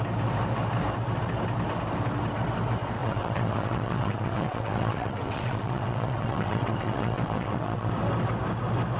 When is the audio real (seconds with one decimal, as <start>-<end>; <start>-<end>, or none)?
0.0-3.0; 7.9-9.0